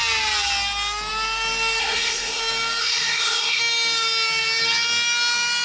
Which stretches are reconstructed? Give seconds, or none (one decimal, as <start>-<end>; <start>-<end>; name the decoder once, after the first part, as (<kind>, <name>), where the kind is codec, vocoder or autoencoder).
1.8-2.4 (codec, SNAC); 2.8-3.6

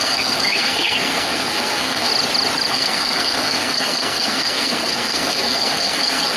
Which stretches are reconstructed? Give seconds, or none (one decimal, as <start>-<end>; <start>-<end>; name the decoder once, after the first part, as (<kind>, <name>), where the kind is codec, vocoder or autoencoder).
0.0-2.1 (codec, SNAC); 2.7-6.4

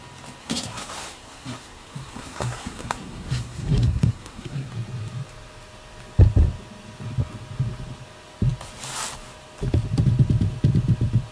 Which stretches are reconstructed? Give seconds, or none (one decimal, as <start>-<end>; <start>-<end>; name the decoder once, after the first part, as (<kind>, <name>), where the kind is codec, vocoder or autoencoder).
0.4-4.7 (codec, SNAC)

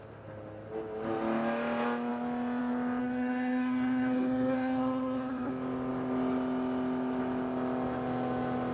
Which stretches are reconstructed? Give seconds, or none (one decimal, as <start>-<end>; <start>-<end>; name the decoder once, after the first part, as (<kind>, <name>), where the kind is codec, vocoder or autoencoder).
3.0-5.5 (codec, SNAC)

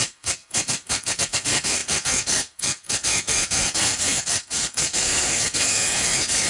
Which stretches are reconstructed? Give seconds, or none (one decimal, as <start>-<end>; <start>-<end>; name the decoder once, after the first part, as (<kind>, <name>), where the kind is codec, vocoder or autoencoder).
0.0-6.5 (codec, SNAC)